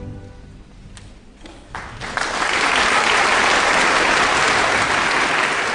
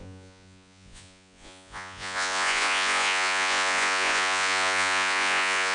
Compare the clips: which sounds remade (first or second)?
second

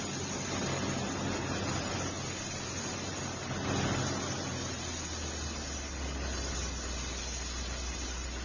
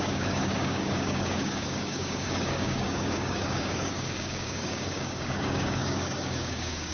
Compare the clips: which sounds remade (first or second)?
second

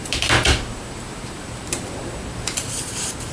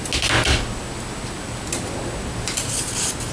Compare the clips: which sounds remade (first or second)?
first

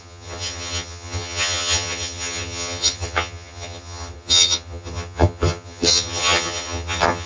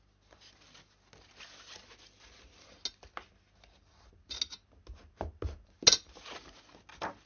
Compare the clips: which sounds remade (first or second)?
first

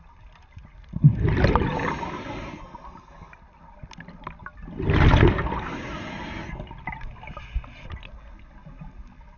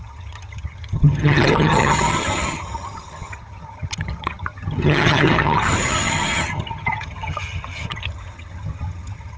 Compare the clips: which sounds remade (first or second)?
second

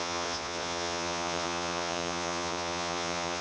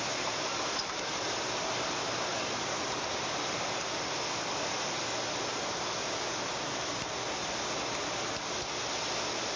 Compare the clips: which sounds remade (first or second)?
first